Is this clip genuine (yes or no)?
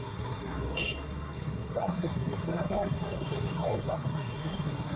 no